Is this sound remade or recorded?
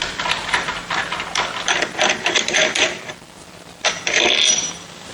remade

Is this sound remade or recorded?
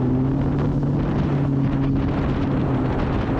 recorded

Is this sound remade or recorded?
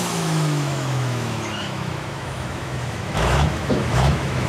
remade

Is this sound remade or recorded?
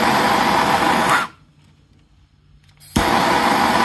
recorded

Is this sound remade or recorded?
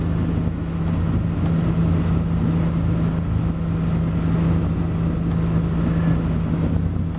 recorded